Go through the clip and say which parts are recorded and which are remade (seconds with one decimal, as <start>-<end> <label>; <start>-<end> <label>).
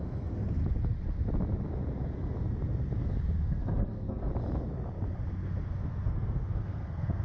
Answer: 0.0-0.6 remade; 0.6-3.4 recorded; 3.4-4.3 remade; 4.3-5.7 recorded; 5.7-7.2 remade